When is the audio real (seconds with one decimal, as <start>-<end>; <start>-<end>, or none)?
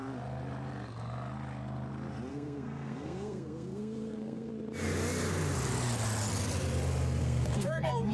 0.0-2.3; 4.5-7.2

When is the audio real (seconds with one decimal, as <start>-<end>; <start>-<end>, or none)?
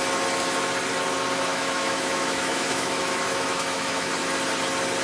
0.0-1.5; 4.1-5.0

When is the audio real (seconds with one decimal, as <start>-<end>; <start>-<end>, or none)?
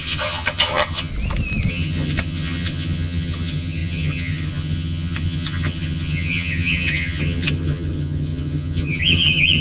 1.1-1.7